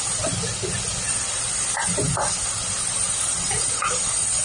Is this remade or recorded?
recorded